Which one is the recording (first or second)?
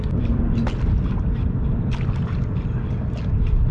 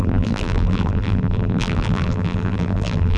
first